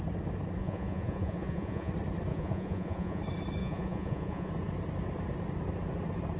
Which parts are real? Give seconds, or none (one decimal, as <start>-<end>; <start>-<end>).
0.0-0.6; 1.9-2.3; 3.2-3.6; 4.5-6.4